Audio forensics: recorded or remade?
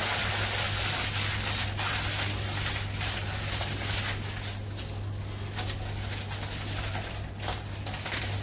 recorded